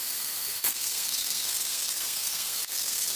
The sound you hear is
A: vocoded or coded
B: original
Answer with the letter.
A